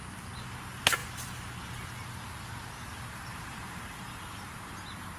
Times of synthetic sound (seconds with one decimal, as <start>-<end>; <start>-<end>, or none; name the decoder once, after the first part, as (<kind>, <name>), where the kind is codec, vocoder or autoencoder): 3.3-4.7 (vocoder, BigVGAN v2)